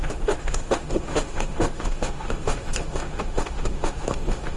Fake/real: fake